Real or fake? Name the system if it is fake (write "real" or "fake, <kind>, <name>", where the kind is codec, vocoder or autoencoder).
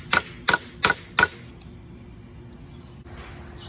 real